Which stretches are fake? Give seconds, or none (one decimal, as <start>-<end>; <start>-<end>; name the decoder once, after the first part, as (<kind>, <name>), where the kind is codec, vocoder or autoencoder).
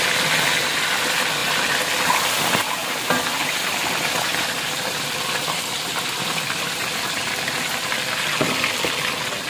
2.8-7.4 (vocoder, BigVGAN v2)